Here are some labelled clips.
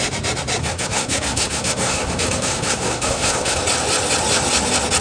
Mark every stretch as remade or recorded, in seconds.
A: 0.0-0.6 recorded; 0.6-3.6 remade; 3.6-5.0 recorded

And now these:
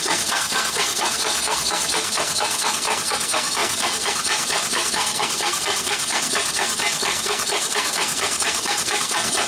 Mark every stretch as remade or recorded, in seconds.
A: 0.0-9.5 remade